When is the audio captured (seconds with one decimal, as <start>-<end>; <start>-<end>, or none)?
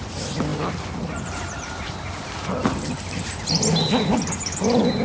0.0-5.0